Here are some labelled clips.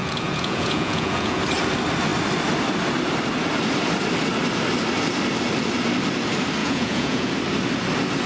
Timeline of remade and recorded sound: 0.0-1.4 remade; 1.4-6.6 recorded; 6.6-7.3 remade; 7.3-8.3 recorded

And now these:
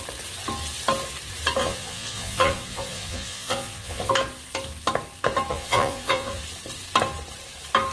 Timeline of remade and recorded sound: 0.0-1.6 recorded; 1.6-4.1 remade; 4.1-5.5 recorded; 5.5-6.4 remade; 6.4-7.9 recorded

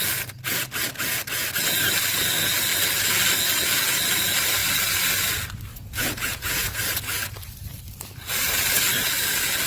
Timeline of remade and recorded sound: 0.0-5.7 recorded; 5.7-6.8 remade; 6.8-9.7 recorded

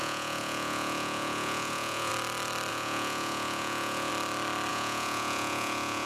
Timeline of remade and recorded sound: 0.0-2.1 remade; 2.1-2.7 recorded; 2.7-4.1 remade; 4.1-4.7 recorded; 4.7-6.1 remade

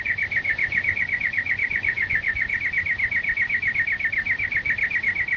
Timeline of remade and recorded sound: 0.0-0.5 recorded; 0.5-2.6 remade; 2.6-5.4 recorded

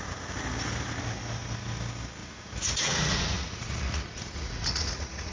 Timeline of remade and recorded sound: 0.0-2.2 recorded; 2.2-5.3 remade